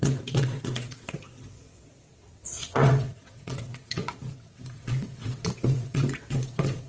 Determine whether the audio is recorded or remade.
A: remade